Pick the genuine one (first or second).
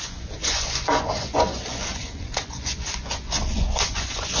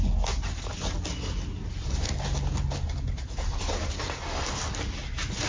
second